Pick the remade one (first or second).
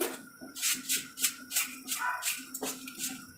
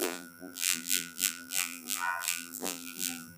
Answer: second